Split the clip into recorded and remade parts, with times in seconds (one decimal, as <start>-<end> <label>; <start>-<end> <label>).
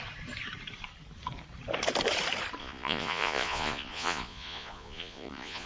0.0-2.6 recorded; 2.6-5.7 remade